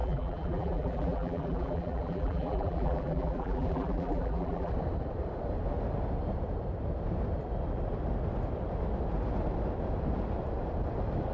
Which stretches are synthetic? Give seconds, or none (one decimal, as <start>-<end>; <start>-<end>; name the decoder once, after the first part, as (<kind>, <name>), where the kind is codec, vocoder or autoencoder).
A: 0.0-4.7 (vocoder, BigVGAN v2)